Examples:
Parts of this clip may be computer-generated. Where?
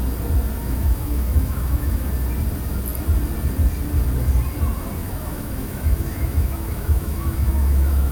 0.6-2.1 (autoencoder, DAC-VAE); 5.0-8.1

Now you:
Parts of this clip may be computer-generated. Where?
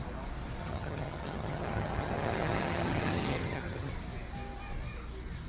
0.6-3.9 (vocoder, HiFi-GAN)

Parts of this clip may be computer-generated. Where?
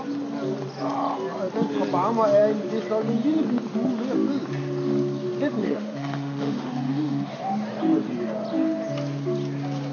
5.6-7.4 (autoencoder, DAC-VAE)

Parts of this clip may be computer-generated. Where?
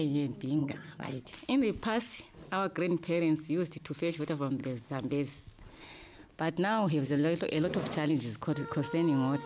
0.6-1.2 (vocoder, HiFi-GAN)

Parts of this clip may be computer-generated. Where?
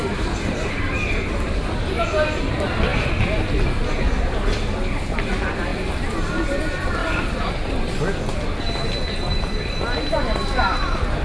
7.0-7.5 (vocoder, BigVGAN v2)